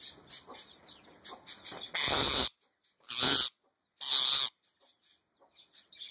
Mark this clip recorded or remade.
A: recorded